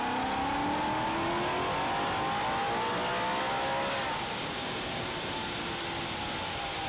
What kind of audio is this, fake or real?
real